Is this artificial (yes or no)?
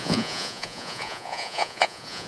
yes